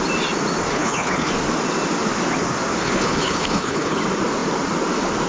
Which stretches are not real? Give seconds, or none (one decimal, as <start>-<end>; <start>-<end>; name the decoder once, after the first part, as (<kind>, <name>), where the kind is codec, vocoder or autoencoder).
0.7-1.3 (codec, HILCodec); 2.8-4.0